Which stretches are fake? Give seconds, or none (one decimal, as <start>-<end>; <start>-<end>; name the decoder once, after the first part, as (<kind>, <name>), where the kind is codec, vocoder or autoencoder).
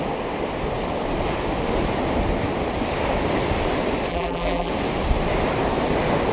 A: 4.1-4.7 (vocoder, BigVGAN v2)